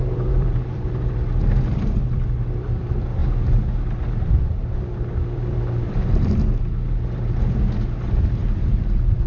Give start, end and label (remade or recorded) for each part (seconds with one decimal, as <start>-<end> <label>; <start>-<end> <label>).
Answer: 0.0-3.2 remade; 3.2-4.4 recorded; 4.4-9.3 remade